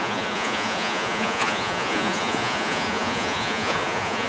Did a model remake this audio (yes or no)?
yes